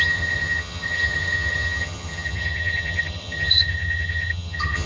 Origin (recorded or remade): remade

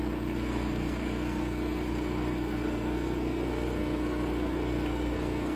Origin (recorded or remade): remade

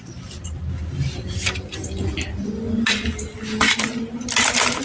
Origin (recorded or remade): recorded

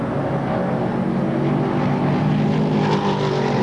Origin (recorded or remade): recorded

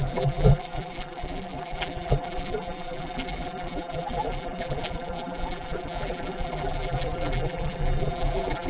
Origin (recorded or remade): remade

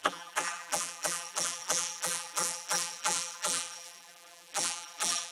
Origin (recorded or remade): remade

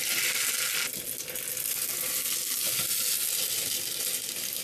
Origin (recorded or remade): recorded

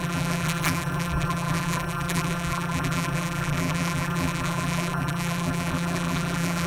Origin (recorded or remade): remade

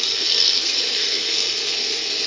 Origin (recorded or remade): remade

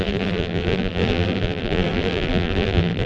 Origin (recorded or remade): remade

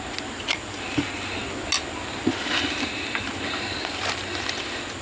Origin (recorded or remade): recorded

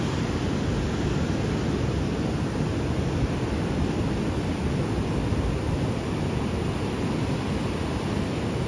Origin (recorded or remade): recorded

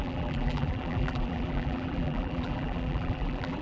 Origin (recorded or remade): remade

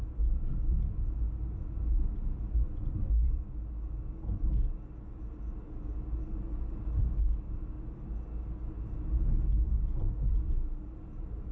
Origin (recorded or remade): recorded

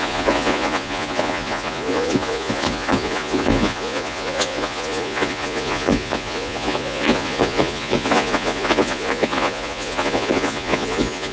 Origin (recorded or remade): remade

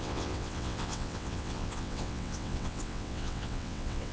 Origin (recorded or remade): remade